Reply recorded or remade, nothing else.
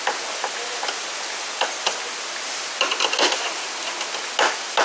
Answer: recorded